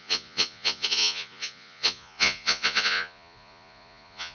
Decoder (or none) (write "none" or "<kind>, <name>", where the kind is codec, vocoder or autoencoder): vocoder, Vocos